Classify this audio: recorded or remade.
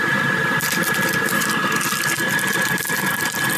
recorded